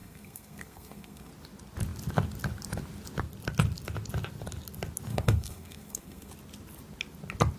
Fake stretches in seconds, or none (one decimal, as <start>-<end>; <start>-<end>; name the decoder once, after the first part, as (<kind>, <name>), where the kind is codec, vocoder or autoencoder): 0.0-1.3 (codec, SNAC); 5.1-6.3